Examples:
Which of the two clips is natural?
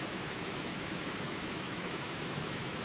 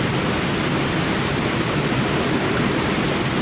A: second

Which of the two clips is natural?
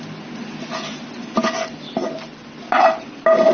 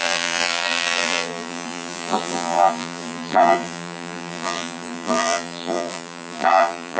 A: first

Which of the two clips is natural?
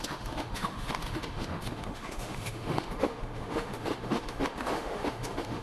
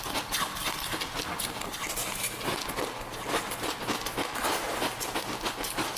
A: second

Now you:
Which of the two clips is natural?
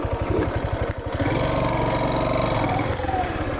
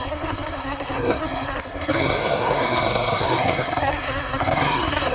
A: first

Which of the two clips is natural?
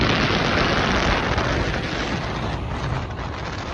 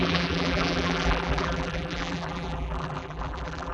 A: first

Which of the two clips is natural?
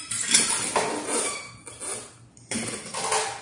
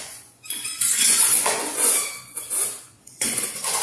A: first